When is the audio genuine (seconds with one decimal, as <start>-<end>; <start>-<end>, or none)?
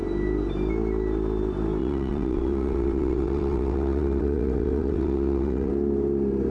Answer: 0.0-1.8; 5.7-6.5